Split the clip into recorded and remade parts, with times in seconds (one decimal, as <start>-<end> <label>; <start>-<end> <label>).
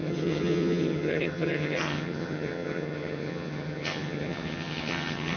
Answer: 0.0-5.4 remade